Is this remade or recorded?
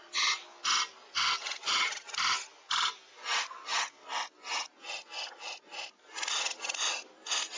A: recorded